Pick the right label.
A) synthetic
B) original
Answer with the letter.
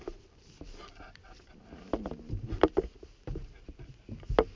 B